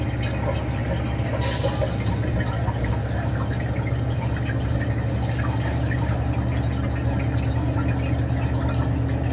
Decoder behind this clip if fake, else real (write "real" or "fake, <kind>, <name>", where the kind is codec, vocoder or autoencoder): real